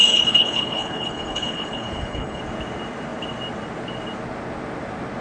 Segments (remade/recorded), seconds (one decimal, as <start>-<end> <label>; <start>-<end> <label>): 0.0-2.4 remade; 2.4-5.2 recorded